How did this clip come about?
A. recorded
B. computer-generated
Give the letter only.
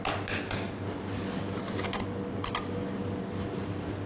A